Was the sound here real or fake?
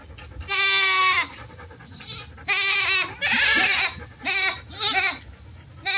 real